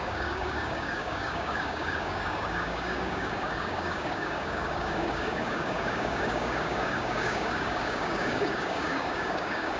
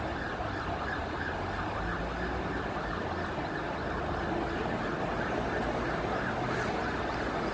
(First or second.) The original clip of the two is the second